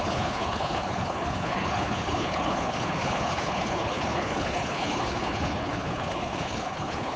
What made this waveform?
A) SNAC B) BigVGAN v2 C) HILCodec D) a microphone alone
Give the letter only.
C